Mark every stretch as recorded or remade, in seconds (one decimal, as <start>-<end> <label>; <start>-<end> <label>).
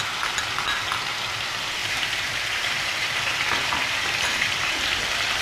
0.0-1.8 recorded; 1.8-5.0 remade; 5.0-5.4 recorded